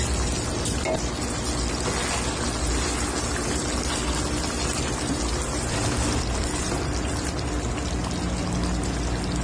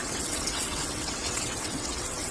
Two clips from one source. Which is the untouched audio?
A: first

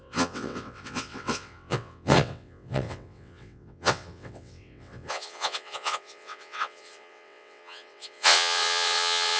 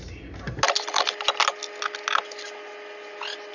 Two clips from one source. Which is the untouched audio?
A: second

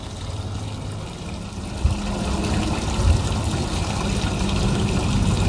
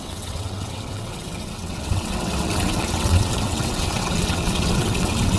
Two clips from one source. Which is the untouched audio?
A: first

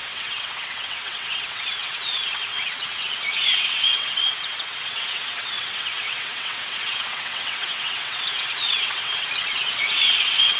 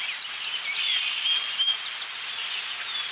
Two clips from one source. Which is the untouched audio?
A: second